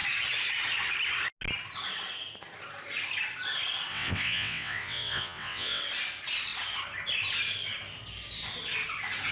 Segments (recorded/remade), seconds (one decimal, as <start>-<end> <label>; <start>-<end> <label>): 0.0-3.9 recorded; 3.9-5.8 remade; 5.8-9.3 recorded